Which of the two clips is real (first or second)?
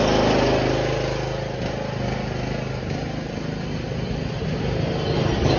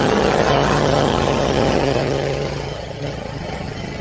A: first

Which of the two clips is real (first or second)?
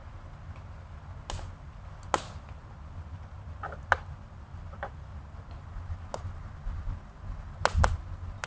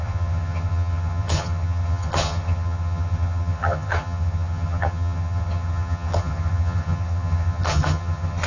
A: first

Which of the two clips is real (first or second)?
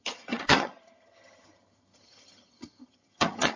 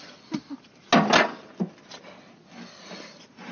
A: second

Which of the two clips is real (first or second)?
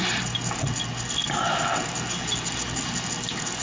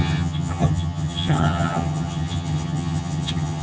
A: first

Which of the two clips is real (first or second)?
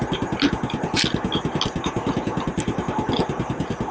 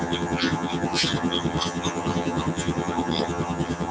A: first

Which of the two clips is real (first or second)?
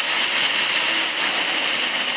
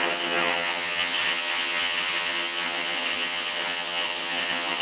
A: first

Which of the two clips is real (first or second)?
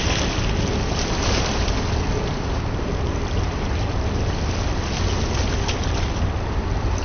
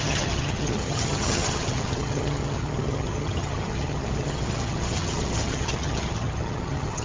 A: first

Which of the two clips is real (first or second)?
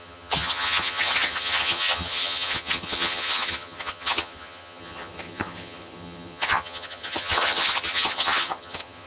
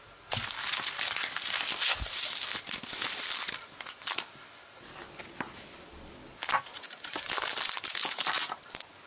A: second